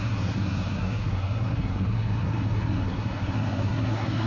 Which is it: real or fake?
fake